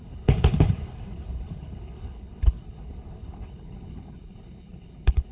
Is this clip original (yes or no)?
no